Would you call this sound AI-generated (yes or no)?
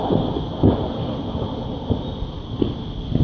no